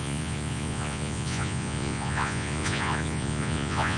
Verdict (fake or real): fake